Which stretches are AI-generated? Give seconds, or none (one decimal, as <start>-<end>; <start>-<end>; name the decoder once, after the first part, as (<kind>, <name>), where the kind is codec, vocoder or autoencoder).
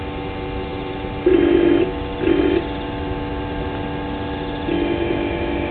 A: none